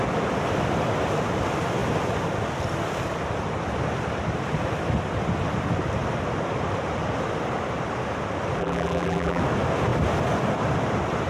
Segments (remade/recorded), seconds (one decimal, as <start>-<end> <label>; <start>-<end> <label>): 0.0-8.6 recorded; 8.6-9.4 remade; 9.4-11.3 recorded